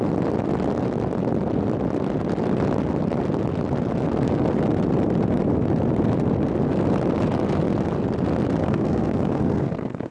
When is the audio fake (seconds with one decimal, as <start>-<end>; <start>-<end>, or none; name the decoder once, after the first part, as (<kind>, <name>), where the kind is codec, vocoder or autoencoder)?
8.6-10.1 (codec, SNAC)